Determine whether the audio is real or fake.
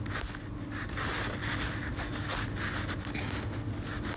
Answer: real